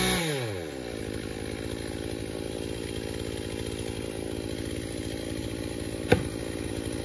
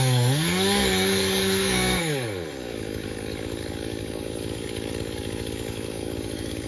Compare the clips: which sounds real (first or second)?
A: first